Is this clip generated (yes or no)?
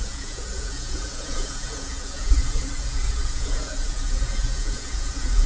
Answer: yes